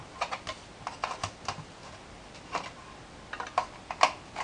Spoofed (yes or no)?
no